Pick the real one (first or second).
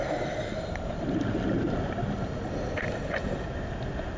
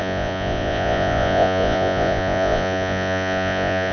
first